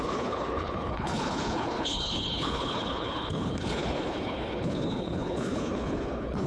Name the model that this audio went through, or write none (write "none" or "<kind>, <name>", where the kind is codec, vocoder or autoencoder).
codec, HILCodec